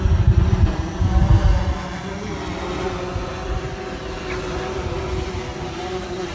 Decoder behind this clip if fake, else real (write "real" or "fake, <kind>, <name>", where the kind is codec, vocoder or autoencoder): real